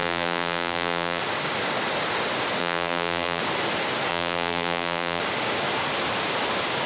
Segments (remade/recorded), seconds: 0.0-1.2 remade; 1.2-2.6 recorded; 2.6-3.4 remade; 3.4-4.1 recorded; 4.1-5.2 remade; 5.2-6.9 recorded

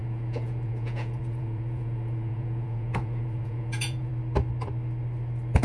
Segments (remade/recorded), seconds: 0.0-4.1 remade; 4.1-5.6 recorded

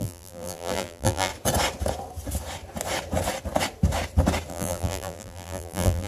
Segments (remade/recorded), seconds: 0.0-1.3 remade; 1.3-4.5 recorded; 4.5-6.1 remade

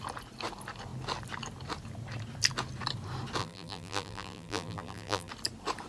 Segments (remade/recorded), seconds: 0.0-3.4 recorded; 3.4-5.3 remade; 5.3-5.9 recorded

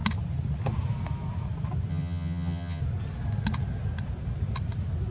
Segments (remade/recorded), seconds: 0.0-1.9 recorded; 1.9-2.8 remade; 2.8-5.1 recorded

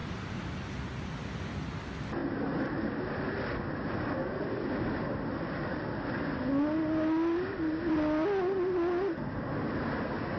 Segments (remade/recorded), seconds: 0.0-0.5 remade; 0.5-10.4 recorded